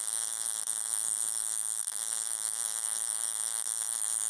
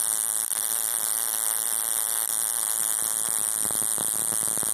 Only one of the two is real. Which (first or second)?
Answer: second